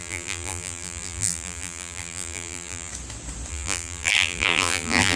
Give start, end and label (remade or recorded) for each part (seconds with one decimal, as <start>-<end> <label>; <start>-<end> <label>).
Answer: 0.0-2.9 remade; 2.9-3.5 recorded; 3.5-5.2 remade